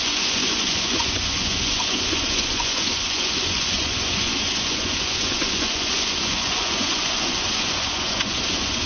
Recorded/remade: remade